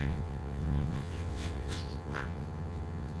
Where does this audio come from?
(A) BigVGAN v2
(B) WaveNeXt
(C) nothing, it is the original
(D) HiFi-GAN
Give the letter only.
B